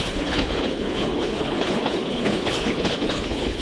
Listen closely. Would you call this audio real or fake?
fake